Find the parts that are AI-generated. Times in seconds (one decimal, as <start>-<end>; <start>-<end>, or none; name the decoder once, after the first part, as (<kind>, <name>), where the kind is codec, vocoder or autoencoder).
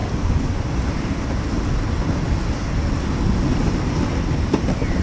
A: none